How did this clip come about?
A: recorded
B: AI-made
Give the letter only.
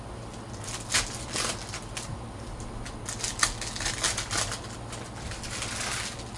A